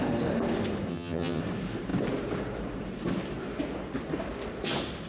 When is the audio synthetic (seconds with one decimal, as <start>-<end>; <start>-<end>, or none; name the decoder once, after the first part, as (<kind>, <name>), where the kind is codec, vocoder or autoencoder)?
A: 0.9-1.4 (vocoder, HiFi-GAN)